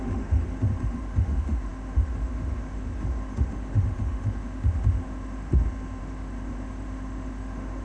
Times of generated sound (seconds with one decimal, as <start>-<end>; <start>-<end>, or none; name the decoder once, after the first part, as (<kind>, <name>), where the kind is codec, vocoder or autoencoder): 0.0-5.5 (autoencoder, DAC-VAE); 6.0-7.8